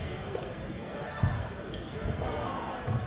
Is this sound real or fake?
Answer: fake